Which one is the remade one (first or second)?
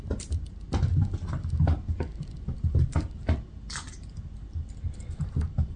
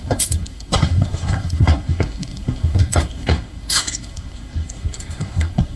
second